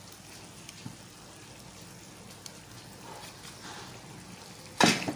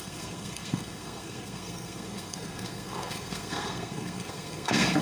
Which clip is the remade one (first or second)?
second